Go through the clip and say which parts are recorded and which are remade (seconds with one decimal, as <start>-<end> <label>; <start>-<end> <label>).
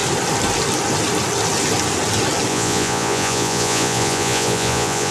0.0-2.5 recorded; 2.5-5.1 remade